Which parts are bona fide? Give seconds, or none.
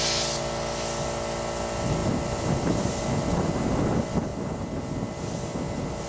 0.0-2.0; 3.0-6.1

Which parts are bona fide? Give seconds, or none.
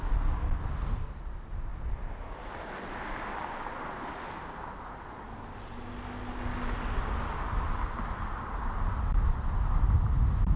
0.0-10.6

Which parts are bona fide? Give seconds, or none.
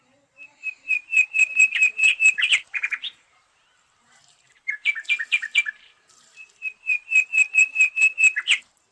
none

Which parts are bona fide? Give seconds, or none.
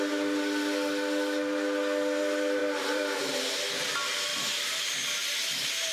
0.0-2.6; 3.4-5.9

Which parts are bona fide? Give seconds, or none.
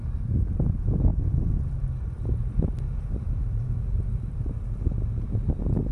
0.0-1.1; 4.6-5.9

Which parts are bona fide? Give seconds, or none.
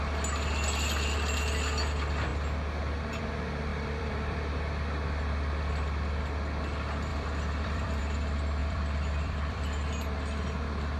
0.0-3.7; 4.5-7.1; 8.0-8.6; 9.9-11.0